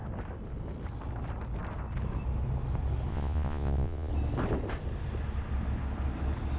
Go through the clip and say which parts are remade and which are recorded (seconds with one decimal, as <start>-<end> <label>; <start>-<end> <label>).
0.0-3.1 recorded; 3.1-4.1 remade; 4.1-6.6 recorded

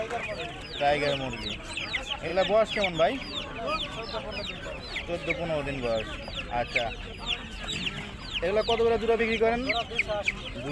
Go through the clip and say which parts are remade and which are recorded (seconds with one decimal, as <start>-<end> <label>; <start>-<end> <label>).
0.0-10.7 recorded

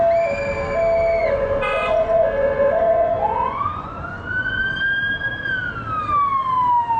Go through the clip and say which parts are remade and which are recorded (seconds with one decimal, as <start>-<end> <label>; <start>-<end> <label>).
0.0-1.2 recorded; 1.2-4.6 remade; 4.6-7.0 recorded

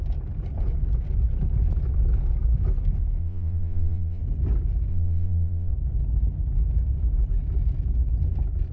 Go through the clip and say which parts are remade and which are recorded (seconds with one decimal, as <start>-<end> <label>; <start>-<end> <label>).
0.0-3.2 recorded; 3.2-4.2 remade; 4.2-4.9 recorded; 4.9-5.7 remade; 5.7-8.7 recorded